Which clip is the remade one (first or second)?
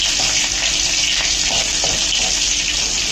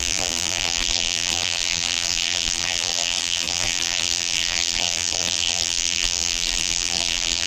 second